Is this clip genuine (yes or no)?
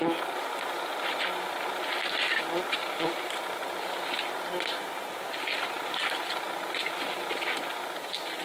yes